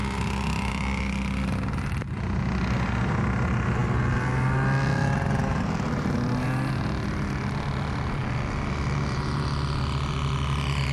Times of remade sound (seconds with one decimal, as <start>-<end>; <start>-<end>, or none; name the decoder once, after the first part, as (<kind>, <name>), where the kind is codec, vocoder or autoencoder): none